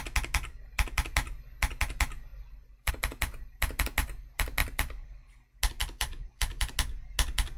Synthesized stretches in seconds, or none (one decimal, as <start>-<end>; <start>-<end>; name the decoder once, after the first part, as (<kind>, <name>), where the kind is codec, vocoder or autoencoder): 2.3-2.9 (vocoder, BigVGAN v2); 4.6-5.3; 5.8-6.7